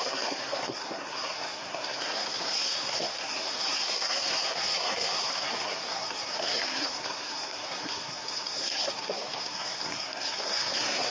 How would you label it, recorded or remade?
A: remade